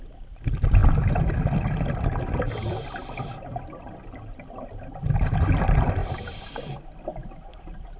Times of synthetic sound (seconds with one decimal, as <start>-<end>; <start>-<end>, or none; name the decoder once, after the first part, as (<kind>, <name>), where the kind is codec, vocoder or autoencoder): 0.0-8.0 (vocoder, BigVGAN v2)

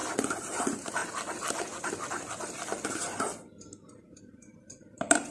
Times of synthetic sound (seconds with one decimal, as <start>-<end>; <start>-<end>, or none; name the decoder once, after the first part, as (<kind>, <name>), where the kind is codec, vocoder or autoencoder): 0.0-1.0 (vocoder, BigVGAN v2); 4.2-5.3

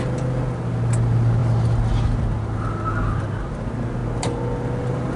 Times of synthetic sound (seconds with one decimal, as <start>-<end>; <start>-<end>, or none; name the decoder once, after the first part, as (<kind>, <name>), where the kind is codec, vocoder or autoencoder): none

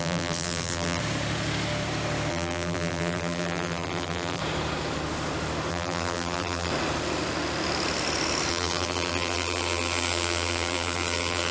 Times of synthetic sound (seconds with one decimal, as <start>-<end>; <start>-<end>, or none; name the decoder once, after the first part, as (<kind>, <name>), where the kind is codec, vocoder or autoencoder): 0.0-1.0 (vocoder, BigVGAN v2); 2.3-4.4; 5.7-6.7; 8.5-11.5

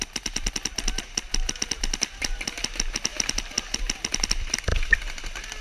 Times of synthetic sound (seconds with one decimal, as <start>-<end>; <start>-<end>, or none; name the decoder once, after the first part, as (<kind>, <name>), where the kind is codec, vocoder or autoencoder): none

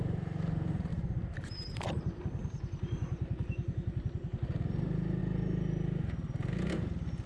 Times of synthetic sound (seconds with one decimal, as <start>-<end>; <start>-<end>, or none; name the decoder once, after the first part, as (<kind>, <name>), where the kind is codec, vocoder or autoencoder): 0.0-0.9 (vocoder, BigVGAN v2); 1.4-2.4; 4.0-5.2